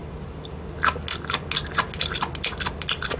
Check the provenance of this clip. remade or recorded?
recorded